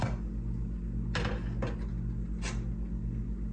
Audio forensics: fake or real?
real